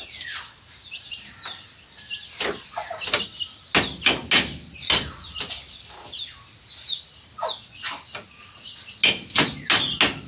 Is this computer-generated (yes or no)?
no